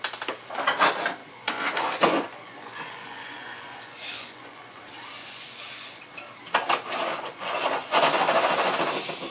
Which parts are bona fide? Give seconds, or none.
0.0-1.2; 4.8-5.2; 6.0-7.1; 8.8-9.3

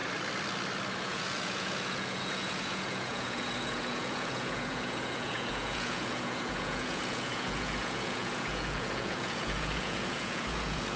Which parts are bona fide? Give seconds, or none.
0.0-1.0

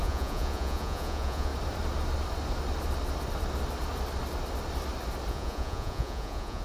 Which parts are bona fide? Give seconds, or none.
1.5-5.3

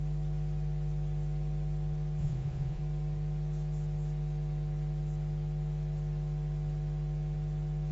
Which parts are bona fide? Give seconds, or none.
0.0-2.2; 2.8-7.9

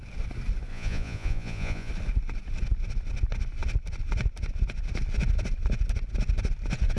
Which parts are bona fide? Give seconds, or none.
0.0-0.7; 1.9-7.0

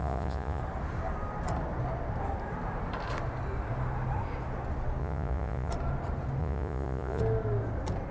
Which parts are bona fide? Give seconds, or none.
0.6-5.0; 5.7-6.4; 7.2-8.1

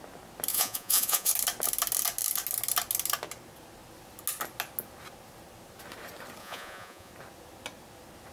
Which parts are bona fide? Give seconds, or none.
0.0-0.5; 1.3-6.4; 7.1-8.3

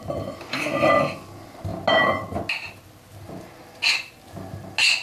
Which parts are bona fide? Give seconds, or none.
0.0-5.0